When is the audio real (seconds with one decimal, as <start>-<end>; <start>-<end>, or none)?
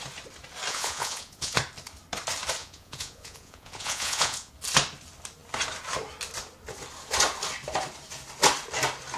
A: 0.0-0.7; 1.6-2.6; 4.5-9.2